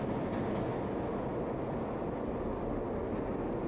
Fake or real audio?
real